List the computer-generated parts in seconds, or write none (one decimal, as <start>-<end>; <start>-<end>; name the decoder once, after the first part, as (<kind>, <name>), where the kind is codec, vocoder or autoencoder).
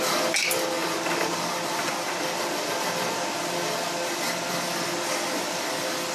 none